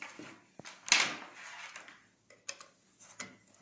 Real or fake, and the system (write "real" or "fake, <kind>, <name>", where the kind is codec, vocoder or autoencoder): real